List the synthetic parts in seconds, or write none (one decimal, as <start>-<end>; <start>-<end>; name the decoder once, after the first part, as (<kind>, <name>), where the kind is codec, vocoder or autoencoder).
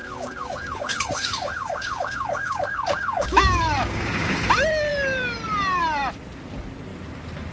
0.0-4.5 (codec, DAC)